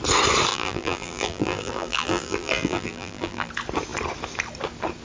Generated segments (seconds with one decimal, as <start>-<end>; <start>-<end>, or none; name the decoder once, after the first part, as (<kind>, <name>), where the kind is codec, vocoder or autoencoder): 0.5-3.5 (vocoder, BigVGAN v2)